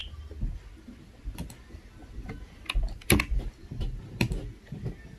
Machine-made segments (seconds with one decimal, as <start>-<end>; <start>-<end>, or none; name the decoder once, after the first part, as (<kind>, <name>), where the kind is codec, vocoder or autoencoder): none